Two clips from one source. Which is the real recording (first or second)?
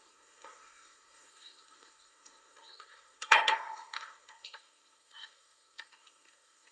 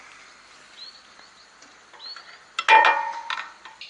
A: second